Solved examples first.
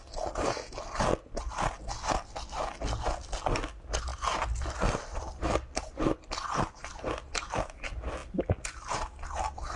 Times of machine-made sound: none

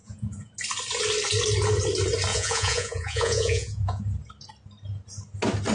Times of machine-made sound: 0.0-0.5 (vocoder, Vocos); 2.3-4.0

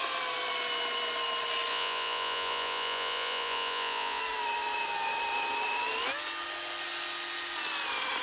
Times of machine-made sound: 1.7-4.2 (vocoder, Vocos)

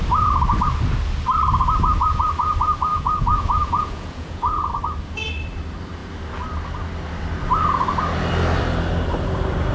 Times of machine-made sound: 2.9-4.7 (vocoder, Vocos)

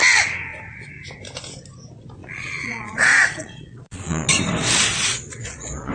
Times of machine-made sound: 2.2-4.3 (vocoder, Vocos); 5.1-5.9